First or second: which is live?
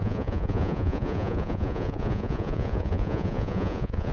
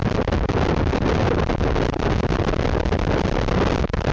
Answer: second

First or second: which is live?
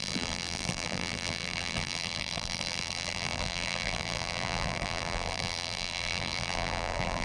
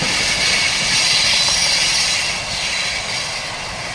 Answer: second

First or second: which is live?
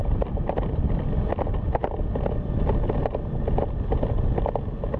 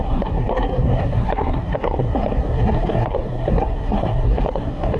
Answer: first